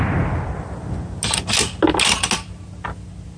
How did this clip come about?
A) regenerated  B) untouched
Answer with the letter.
B